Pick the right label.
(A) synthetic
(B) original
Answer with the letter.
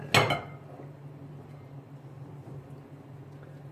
B